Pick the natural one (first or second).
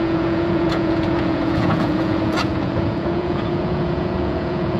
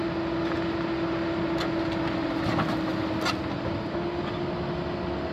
second